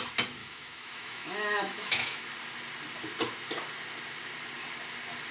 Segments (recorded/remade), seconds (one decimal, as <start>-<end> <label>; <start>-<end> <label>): 0.0-0.4 recorded; 0.4-2.2 remade; 2.2-5.3 recorded

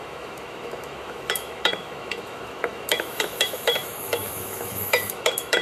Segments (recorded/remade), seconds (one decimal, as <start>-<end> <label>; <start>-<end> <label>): 0.0-5.6 remade

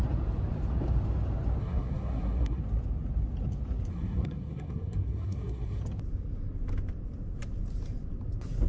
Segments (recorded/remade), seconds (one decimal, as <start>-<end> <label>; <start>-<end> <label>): 0.0-1.6 recorded; 1.6-2.6 remade; 2.6-3.9 recorded; 3.9-5.8 remade; 5.8-8.7 recorded

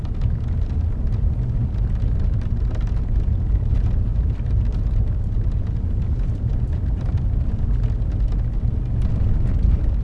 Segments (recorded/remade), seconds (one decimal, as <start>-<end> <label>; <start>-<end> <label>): 0.0-4.1 recorded; 4.1-7.2 remade; 7.2-10.0 recorded

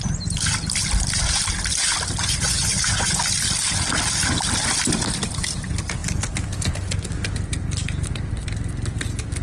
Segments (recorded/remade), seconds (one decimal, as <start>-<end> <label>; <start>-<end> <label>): 0.0-2.2 recorded; 2.2-3.2 remade; 3.2-9.4 recorded

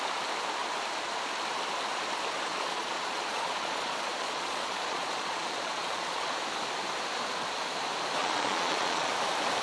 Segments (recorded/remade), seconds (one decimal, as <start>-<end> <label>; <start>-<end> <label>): 0.0-2.5 recorded; 2.5-6.3 remade; 6.3-8.2 recorded; 8.2-9.1 remade; 9.1-9.6 recorded

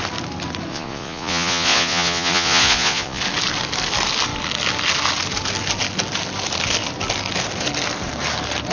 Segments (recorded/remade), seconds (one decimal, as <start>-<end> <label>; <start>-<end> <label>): 0.0-0.7 recorded; 0.7-3.2 remade; 3.2-8.7 recorded